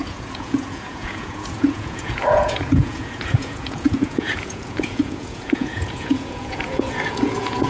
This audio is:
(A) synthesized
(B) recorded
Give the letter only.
A